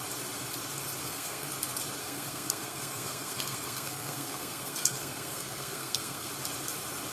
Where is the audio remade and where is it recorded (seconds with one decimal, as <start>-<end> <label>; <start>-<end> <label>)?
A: 0.0-1.0 recorded; 1.0-1.5 remade; 1.5-2.0 recorded; 2.0-6.3 remade; 6.3-7.1 recorded